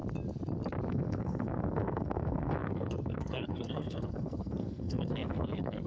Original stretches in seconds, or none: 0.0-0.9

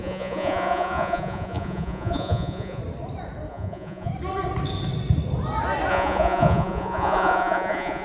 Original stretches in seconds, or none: 2.8-3.5; 4.1-5.9